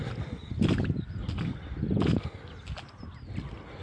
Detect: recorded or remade recorded